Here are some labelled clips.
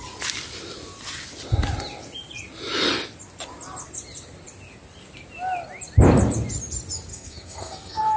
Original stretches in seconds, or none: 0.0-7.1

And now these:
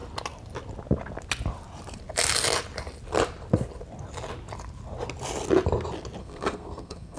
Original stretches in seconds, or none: 0.0-6.2

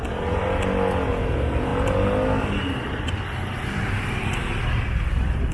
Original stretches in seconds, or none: 0.0-5.5

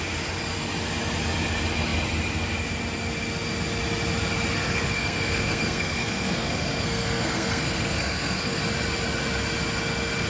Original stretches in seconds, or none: 0.0-4.6; 8.6-10.3